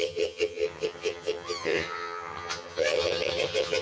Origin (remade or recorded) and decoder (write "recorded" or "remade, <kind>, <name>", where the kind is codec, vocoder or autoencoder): remade, vocoder, HiFi-GAN